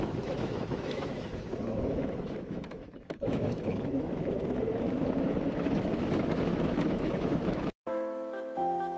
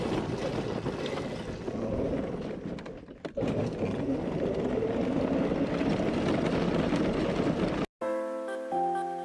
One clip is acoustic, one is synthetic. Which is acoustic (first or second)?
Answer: second